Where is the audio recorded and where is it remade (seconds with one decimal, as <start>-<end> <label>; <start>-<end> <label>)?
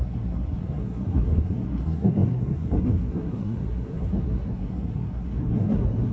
0.0-6.1 remade